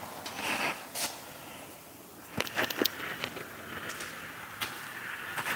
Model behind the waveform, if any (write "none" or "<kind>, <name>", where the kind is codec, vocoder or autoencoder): none